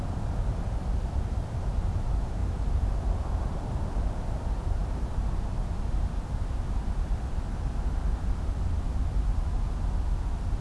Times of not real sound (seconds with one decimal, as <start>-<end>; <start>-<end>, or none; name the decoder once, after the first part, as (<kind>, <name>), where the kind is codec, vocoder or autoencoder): 4.8-7.3 (vocoder, BigVGAN v2)